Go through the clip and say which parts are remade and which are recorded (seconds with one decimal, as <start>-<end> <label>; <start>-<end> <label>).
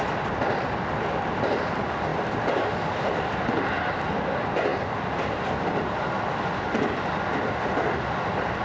0.0-8.6 recorded